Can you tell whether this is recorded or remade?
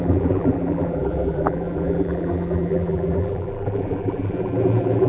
remade